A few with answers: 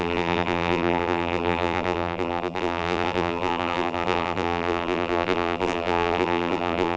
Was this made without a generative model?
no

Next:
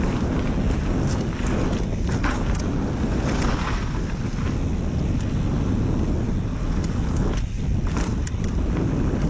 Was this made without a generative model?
yes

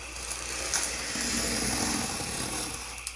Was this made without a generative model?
yes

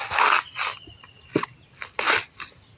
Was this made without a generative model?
yes